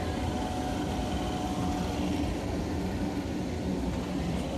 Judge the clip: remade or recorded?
recorded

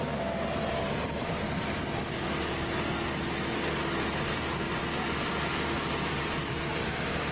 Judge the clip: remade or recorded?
recorded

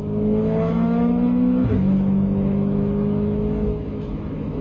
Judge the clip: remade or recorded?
remade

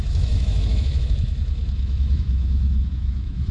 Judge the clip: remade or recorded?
remade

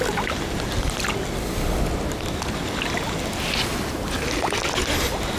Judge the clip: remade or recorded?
recorded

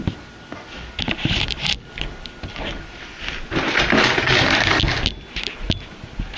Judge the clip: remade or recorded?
recorded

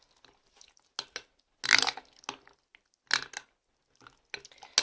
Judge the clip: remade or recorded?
recorded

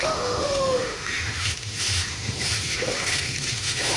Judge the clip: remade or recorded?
remade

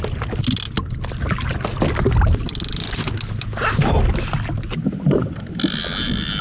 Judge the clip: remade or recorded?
recorded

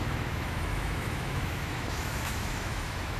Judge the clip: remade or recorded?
remade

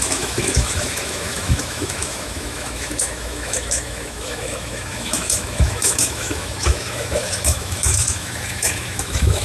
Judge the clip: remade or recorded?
remade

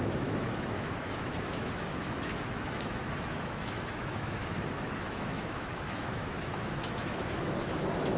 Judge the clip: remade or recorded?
remade